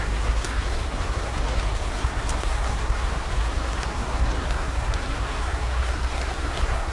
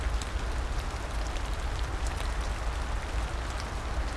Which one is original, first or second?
second